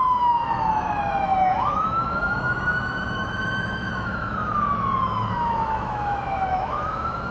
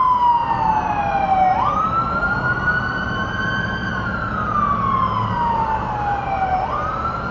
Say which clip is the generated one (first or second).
first